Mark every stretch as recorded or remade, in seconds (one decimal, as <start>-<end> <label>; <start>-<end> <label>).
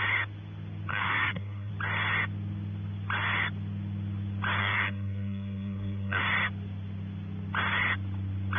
0.0-0.9 recorded; 0.9-1.7 remade; 1.7-4.6 recorded; 4.6-6.2 remade; 6.2-8.6 recorded